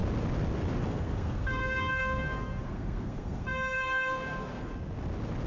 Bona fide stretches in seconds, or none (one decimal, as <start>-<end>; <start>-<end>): 0.0-0.9; 4.7-5.5

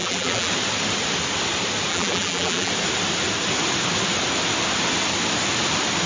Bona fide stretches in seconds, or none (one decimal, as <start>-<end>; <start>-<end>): 0.5-1.9; 2.7-6.1